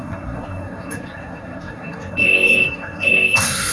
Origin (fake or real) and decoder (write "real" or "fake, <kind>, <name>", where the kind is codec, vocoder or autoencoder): fake, codec, SNAC